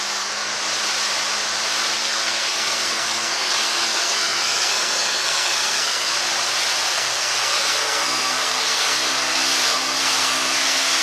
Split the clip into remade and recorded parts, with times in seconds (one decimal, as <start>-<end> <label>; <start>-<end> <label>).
0.0-0.5 remade; 0.5-2.0 recorded; 2.0-6.2 remade; 6.2-6.9 recorded; 6.9-11.0 remade